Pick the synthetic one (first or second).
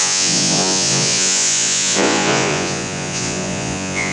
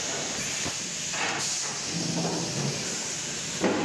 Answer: first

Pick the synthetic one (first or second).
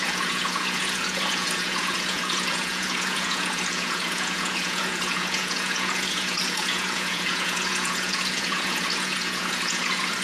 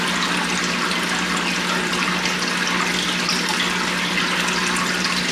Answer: first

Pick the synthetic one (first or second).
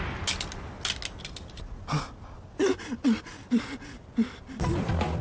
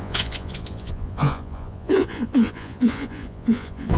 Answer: second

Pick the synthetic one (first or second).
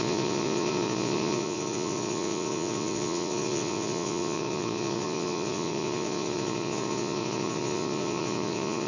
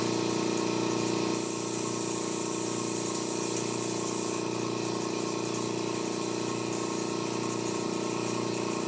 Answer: first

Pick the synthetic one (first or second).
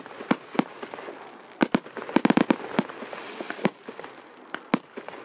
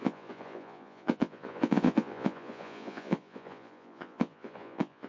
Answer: second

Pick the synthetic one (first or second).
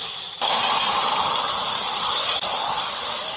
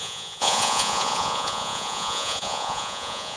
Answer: second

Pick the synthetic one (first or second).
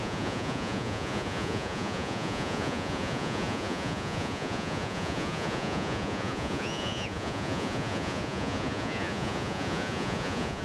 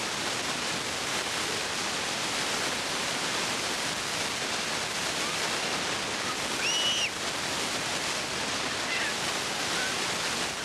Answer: first